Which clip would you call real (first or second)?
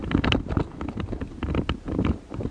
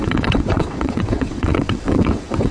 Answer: first